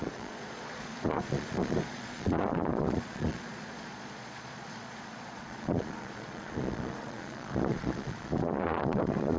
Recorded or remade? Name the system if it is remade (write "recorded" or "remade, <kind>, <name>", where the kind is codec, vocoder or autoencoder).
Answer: remade, vocoder, Vocos